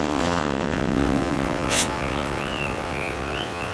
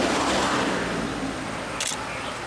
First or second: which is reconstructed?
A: first